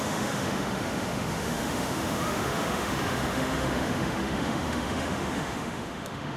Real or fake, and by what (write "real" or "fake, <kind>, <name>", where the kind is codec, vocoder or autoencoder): fake, autoencoder, DAC-VAE